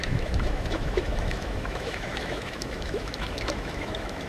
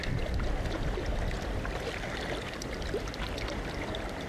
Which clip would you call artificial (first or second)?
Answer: first